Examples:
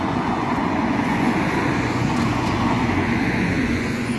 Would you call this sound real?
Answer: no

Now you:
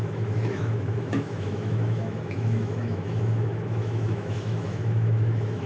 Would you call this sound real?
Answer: no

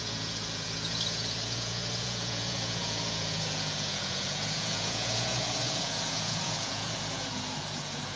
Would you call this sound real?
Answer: no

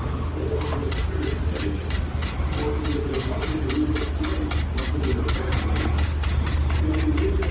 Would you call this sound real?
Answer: yes